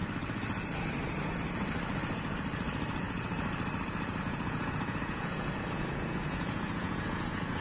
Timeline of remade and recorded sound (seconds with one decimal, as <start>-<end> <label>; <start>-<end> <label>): 0.0-4.2 recorded; 4.2-7.6 remade